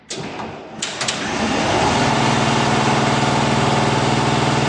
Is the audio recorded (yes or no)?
yes